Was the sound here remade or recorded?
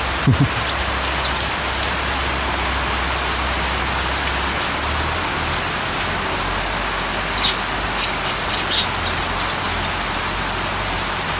recorded